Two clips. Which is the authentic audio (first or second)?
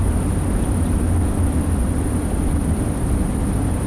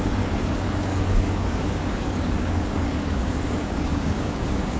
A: first